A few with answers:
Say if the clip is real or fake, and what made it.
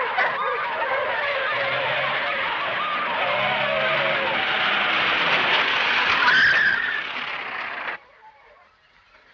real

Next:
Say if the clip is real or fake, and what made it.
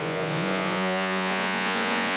fake, vocoder, Vocos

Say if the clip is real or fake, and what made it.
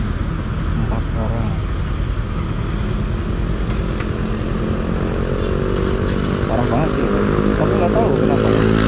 real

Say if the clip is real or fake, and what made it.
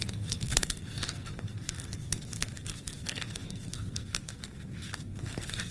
fake, codec, SNAC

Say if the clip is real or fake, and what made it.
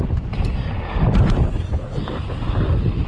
real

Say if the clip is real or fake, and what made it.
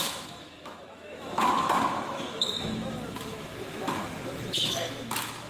fake, autoencoder, DAC-VAE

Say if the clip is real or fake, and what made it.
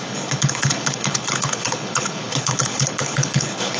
fake, codec, HILCodec